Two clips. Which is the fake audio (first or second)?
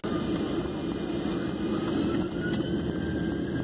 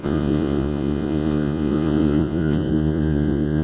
second